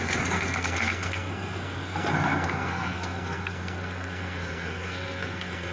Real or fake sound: fake